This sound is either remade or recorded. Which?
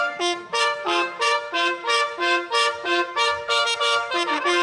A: remade